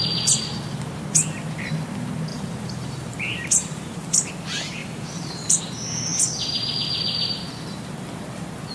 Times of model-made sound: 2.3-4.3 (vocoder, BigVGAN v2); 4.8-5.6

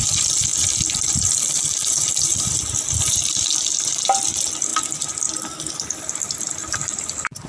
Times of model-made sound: 0.0-4.7 (vocoder, BigVGAN v2); 5.7-7.5

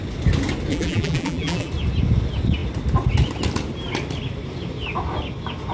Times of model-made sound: 0.7-1.7 (vocoder, BigVGAN v2)

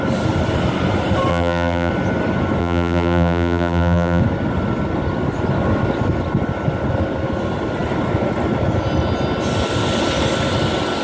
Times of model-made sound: 1.3-1.9 (vocoder, BigVGAN v2); 2.6-4.2

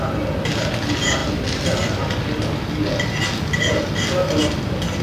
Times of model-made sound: none

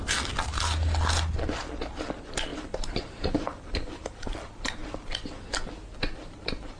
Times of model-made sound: 2.5-4.3 (vocoder, BigVGAN v2)